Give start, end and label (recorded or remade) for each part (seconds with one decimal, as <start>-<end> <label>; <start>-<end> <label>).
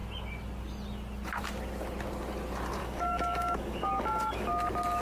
0.0-2.8 recorded; 2.8-4.5 remade; 4.5-5.0 recorded